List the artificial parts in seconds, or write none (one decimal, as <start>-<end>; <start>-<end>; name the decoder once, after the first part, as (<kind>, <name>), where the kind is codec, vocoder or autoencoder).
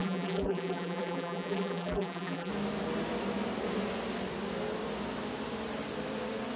0.0-2.5 (vocoder, BigVGAN v2)